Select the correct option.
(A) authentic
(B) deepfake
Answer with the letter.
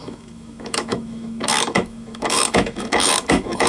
B